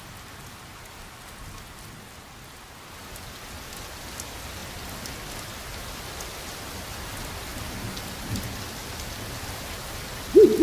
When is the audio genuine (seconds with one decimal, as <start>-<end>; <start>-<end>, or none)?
0.0-10.6